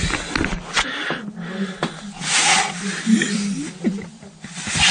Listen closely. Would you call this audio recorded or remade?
recorded